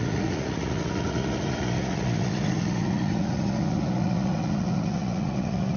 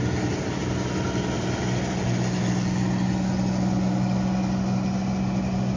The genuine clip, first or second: second